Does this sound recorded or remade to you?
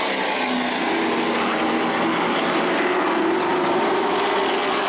recorded